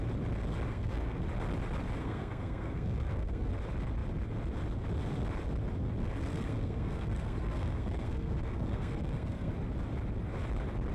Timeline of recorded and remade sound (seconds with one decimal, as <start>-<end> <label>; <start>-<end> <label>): 0.0-0.7 recorded; 0.7-1.2 remade; 1.2-2.0 recorded; 2.0-3.5 remade; 3.5-6.0 recorded; 6.0-9.5 remade; 9.5-10.9 recorded